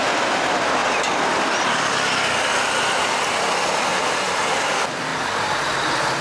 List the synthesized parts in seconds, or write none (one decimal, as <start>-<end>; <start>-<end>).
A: 3.9-4.4